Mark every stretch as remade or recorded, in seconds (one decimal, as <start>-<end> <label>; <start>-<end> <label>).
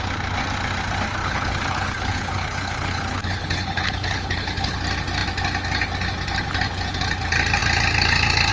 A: 0.0-1.2 recorded; 1.2-4.8 remade; 4.8-8.5 recorded